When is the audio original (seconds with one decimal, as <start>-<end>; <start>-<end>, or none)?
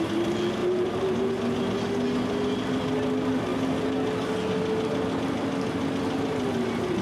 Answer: 0.0-0.6; 1.3-7.0